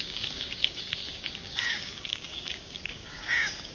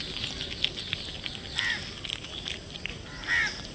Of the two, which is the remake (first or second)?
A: first